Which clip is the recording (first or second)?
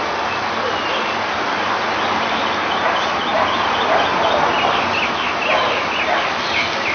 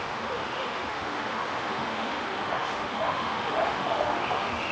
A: first